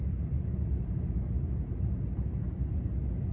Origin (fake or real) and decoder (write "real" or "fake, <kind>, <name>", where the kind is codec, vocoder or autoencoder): real